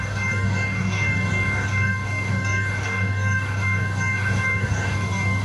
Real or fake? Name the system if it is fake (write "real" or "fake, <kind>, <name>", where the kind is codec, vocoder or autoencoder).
fake, codec, DAC